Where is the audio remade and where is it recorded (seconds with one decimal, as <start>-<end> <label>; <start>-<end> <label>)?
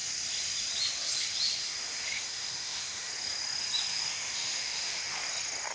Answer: 0.0-1.6 recorded; 1.6-3.1 remade; 3.1-3.9 recorded; 3.9-5.0 remade; 5.0-5.7 recorded